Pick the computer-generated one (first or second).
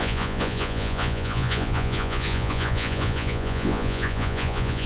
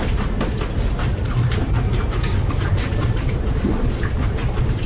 first